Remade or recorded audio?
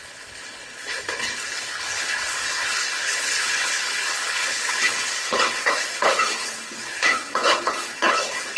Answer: remade